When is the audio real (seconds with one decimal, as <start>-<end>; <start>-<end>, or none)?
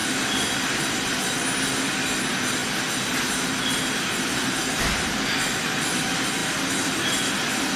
0.0-7.8